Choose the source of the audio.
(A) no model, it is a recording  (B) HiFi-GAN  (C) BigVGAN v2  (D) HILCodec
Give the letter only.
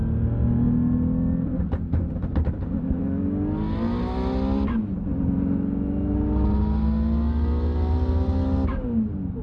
A